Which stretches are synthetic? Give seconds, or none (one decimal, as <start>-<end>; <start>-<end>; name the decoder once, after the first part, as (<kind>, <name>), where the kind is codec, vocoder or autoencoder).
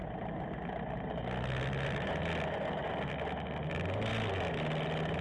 none